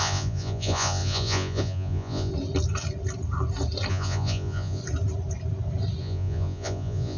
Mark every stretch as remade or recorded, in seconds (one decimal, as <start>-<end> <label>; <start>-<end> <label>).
0.0-2.3 remade; 2.3-3.9 recorded; 3.9-4.8 remade; 4.8-6.0 recorded; 6.0-7.2 remade